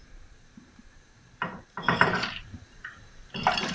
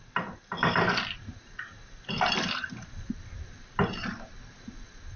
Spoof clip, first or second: first